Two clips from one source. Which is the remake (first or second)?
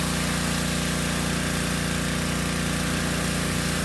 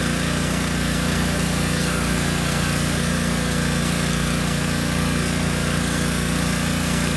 second